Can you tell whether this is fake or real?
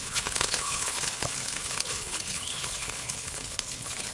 fake